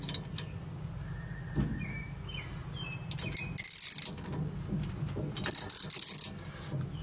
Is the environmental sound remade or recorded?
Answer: recorded